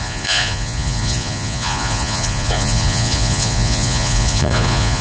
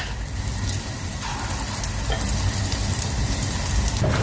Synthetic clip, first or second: first